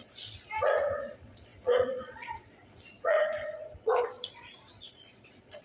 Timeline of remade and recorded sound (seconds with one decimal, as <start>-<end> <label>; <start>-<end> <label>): 0.0-5.6 remade